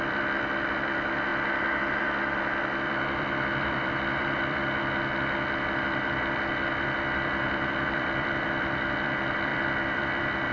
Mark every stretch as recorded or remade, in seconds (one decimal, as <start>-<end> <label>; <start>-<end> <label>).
0.0-1.3 remade; 1.3-1.8 recorded; 1.8-4.6 remade; 4.6-5.8 recorded; 5.8-10.5 remade